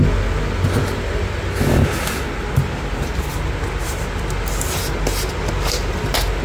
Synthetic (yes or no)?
no